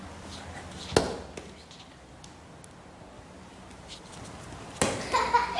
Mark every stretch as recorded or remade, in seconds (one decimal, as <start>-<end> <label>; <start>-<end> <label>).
0.0-5.6 recorded